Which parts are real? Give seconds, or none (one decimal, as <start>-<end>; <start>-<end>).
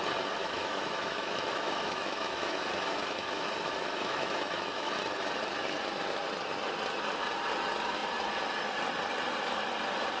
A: 0.0-0.4; 5.0-10.2